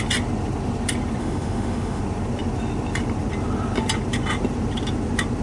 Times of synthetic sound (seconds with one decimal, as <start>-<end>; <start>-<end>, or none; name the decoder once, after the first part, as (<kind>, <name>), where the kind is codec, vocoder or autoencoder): 1.2-2.0 (autoencoder, DAC-VAE)